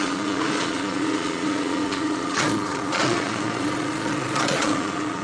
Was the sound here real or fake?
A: fake